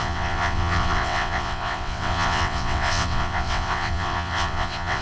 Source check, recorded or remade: remade